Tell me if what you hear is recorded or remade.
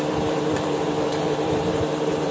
remade